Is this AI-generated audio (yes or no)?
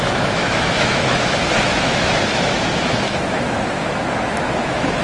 yes